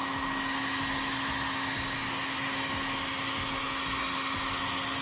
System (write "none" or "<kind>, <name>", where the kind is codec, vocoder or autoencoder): none